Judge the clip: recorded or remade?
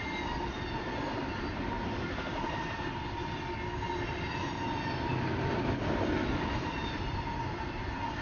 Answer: recorded